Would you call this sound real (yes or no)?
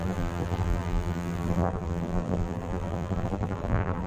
no